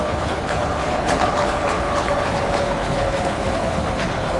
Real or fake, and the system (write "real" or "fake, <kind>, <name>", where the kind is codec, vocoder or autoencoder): fake, codec, HILCodec